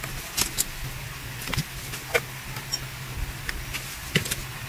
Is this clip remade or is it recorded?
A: recorded